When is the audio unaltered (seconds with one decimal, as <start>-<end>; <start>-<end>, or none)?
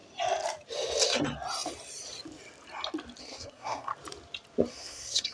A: 0.0-3.2; 3.9-4.7